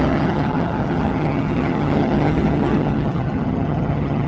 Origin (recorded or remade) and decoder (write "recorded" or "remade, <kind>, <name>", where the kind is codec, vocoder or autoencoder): remade, vocoder, HiFi-GAN